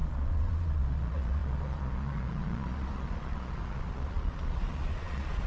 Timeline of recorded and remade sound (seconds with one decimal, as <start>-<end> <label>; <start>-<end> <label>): 0.0-5.5 remade